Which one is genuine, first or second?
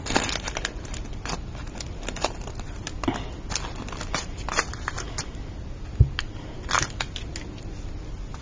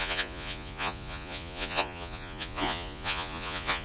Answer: first